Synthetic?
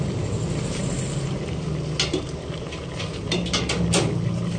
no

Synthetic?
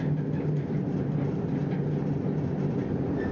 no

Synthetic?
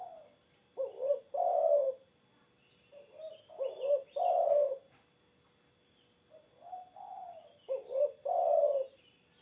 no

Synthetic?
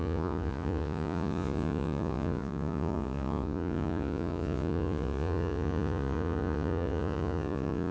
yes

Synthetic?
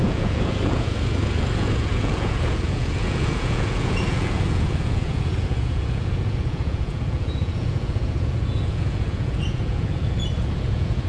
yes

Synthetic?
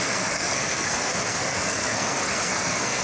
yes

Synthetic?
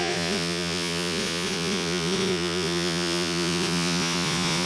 yes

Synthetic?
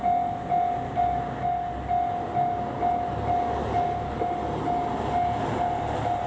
no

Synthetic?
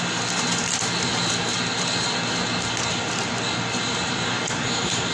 no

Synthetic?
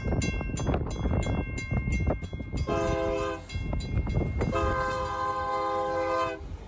no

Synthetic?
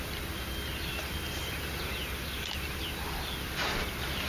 no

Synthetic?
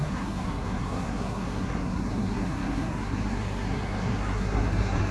yes